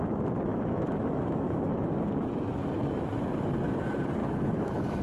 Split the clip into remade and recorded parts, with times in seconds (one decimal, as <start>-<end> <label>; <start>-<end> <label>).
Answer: 0.0-0.5 recorded; 0.5-3.1 remade; 3.1-4.2 recorded; 4.2-5.0 remade